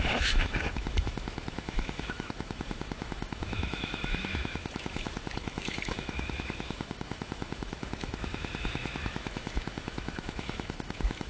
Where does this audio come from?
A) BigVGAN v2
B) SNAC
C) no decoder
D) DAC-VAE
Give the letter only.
D